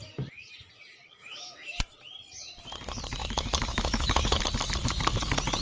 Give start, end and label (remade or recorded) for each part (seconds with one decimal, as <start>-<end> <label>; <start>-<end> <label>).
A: 0.0-1.2 recorded; 1.2-1.8 remade; 1.8-3.2 recorded; 3.2-4.4 remade; 4.4-5.6 recorded